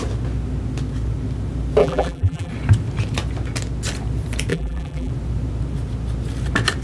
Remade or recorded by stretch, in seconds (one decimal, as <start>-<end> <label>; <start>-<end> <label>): 0.0-1.8 recorded; 1.8-2.5 remade; 2.5-4.5 recorded; 4.5-5.1 remade; 5.1-6.8 recorded